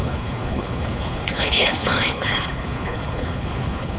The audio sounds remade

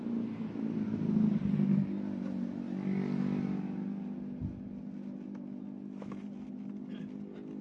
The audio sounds recorded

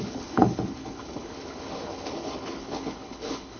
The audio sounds remade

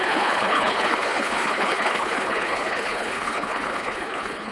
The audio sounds remade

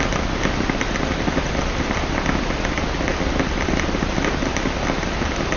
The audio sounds recorded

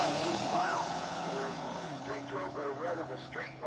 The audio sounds remade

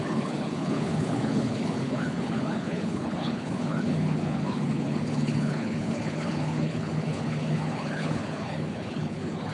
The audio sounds remade